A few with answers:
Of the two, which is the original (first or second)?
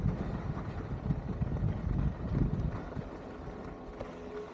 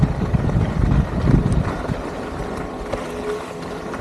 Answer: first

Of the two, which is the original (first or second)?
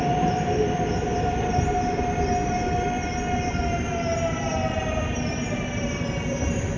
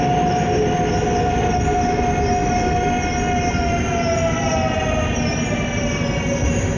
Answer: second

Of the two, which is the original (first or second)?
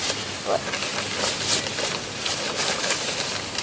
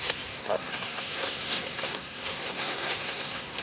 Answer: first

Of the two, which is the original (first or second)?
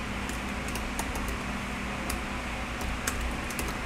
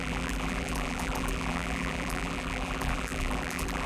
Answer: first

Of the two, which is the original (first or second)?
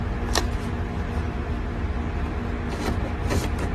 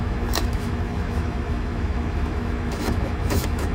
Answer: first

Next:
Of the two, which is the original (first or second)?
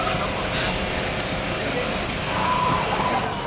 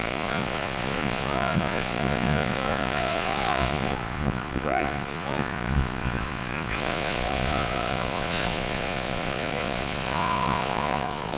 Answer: first